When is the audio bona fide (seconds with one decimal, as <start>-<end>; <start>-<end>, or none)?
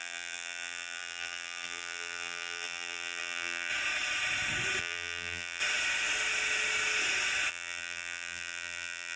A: 3.7-4.8; 5.6-7.5